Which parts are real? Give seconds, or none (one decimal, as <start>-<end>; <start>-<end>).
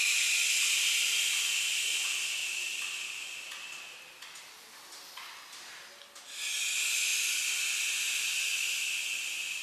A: 0.0-9.6